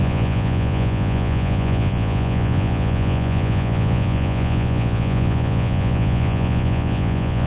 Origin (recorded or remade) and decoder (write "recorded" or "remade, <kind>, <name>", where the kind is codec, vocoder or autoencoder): remade, vocoder, Vocos